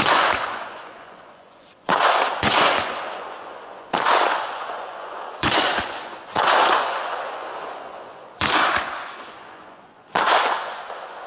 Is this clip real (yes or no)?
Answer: no